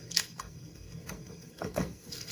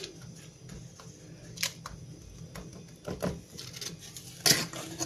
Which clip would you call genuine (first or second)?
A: second